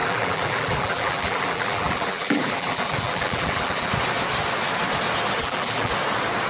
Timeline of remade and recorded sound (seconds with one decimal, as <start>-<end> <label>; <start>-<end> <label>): 0.0-3.9 remade; 3.9-5.4 recorded; 5.4-5.9 remade; 5.9-6.5 recorded